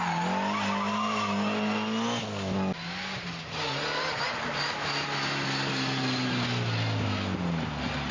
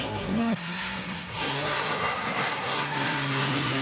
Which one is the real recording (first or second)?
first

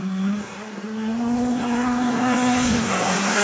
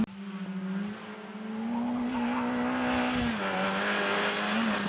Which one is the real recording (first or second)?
second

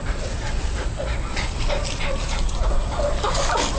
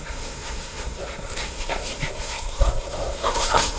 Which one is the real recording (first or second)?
first